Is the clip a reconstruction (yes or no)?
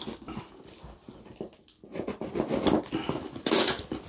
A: no